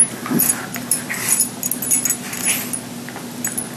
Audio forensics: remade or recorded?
recorded